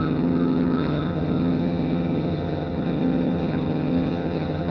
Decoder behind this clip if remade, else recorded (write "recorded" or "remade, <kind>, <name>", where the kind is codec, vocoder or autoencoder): remade, vocoder, HiFi-GAN